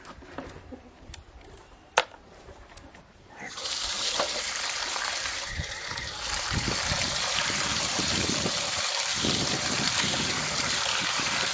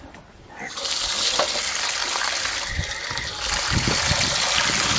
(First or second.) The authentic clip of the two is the second